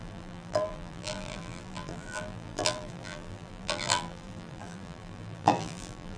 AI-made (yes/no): yes